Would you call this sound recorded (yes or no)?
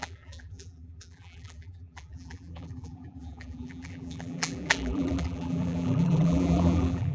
no